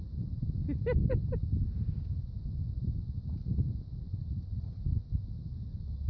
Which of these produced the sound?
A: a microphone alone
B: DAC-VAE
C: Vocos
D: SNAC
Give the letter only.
A